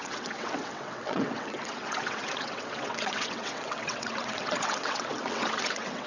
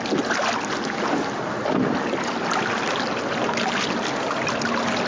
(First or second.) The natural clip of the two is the second